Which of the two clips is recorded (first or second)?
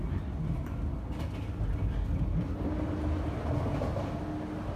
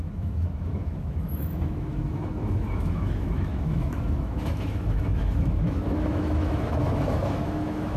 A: first